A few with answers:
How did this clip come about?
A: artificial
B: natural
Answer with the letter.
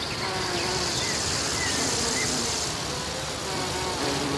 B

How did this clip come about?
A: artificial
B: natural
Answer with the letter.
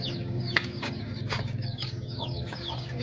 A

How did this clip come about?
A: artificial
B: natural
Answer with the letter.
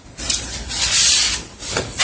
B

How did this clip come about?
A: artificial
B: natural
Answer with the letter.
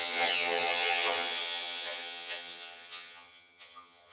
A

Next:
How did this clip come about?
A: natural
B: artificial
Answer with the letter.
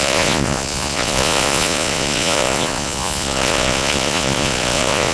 B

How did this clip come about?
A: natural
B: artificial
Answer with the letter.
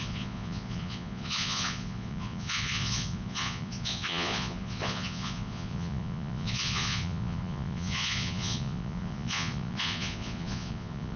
B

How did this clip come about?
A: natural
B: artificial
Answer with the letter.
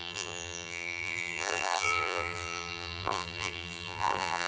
B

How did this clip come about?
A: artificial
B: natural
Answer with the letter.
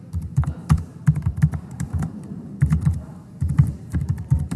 A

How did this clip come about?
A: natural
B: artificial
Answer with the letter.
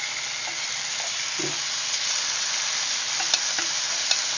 A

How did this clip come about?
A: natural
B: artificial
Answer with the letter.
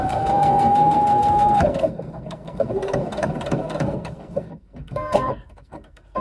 B